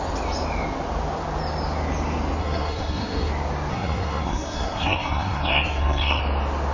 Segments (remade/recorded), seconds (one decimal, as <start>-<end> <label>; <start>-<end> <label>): 0.0-2.4 recorded; 2.4-3.3 remade; 3.3-3.7 recorded; 3.7-6.2 remade; 6.2-6.7 recorded